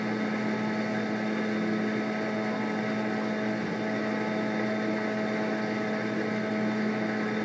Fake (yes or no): no